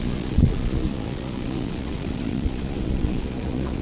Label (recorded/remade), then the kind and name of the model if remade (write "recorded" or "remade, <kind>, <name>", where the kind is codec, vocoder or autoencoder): remade, vocoder, Vocos